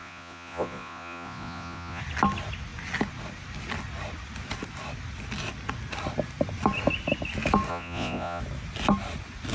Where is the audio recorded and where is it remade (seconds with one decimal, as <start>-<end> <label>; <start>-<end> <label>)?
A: 0.0-2.0 remade; 2.0-7.7 recorded; 7.7-8.4 remade; 8.4-9.5 recorded